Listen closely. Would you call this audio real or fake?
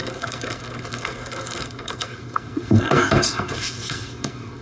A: fake